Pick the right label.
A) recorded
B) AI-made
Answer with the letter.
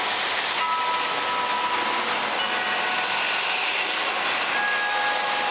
A